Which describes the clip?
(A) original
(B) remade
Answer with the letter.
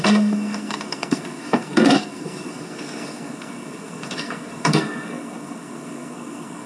B